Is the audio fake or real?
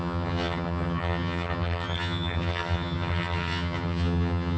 fake